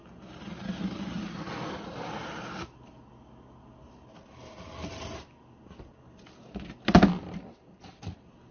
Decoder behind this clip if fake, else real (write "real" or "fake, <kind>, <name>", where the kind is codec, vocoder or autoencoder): real